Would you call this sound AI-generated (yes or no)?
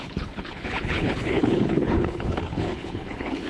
yes